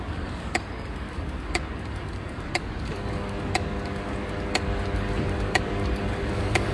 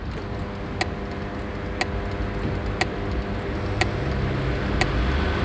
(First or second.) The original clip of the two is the second